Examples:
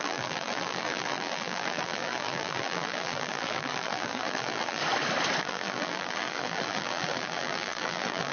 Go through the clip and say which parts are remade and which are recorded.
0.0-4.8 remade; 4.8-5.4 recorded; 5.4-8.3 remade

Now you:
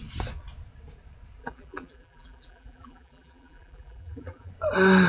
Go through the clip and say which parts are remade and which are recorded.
0.0-1.4 recorded; 1.4-4.5 remade; 4.5-5.1 recorded

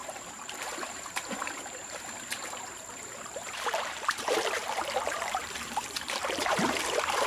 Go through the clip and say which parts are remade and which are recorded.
0.0-7.3 remade

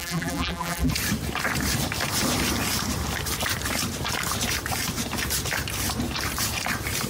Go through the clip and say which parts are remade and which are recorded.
0.0-0.9 remade; 0.9-7.1 recorded

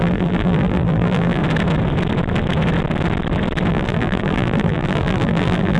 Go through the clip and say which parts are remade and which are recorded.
0.0-1.4 remade; 1.4-3.7 recorded; 3.7-5.8 remade

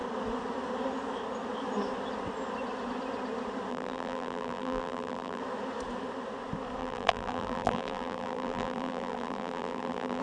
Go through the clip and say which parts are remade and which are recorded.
0.0-3.7 recorded; 3.7-5.4 remade; 5.4-6.8 recorded; 6.8-10.2 remade

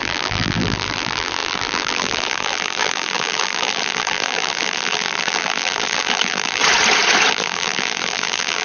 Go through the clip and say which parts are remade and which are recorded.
0.0-6.6 remade; 6.6-7.3 recorded; 7.3-8.6 remade

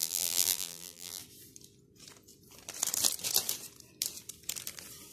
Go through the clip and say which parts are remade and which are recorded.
0.0-1.2 remade; 1.2-5.1 recorded